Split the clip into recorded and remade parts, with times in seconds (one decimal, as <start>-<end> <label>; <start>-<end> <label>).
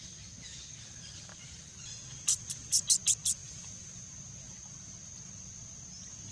0.0-6.3 recorded